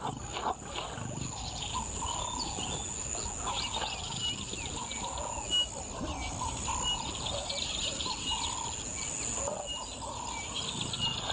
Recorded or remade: recorded